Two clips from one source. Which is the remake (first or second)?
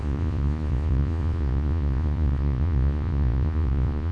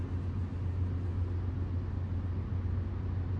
first